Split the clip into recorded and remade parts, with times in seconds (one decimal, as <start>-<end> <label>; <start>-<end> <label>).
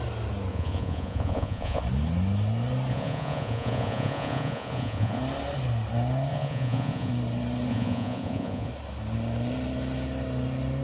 0.0-0.5 recorded; 0.5-1.8 remade; 1.8-2.9 recorded; 2.9-5.2 remade; 5.2-6.3 recorded; 6.3-7.1 remade; 7.1-7.7 recorded; 7.7-8.7 remade; 8.7-10.8 recorded